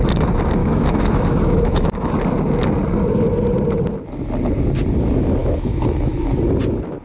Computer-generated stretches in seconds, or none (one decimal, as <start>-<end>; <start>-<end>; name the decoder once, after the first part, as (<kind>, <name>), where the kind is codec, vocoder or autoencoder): 0.6-2.1 (autoencoder, DAC-VAE); 5.4-6.3